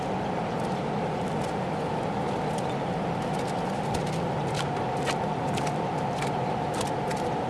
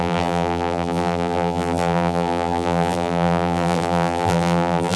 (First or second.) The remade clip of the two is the second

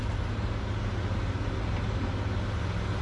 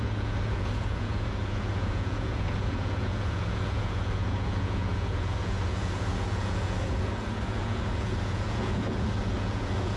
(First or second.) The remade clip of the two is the second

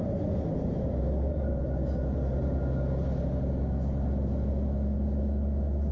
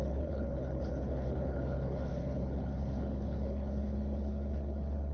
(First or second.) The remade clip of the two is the second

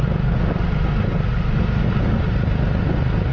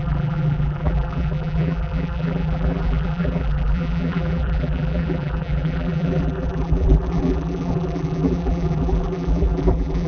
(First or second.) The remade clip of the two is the second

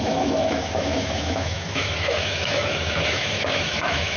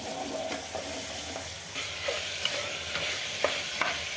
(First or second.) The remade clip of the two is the first